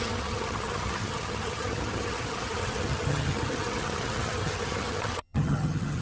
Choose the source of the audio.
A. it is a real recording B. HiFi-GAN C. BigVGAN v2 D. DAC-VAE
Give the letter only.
B